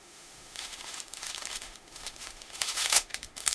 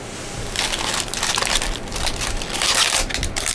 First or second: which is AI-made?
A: first